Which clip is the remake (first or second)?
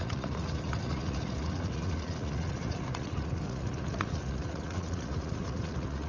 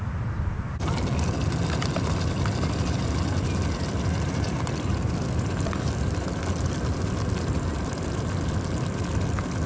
first